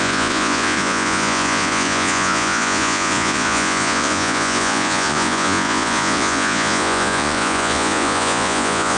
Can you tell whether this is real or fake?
fake